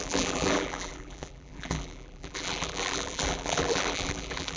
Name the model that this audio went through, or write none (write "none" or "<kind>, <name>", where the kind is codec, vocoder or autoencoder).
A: vocoder, BigVGAN v2